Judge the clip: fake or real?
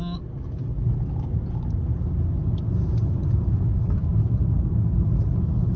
real